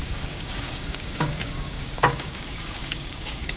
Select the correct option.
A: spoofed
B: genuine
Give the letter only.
A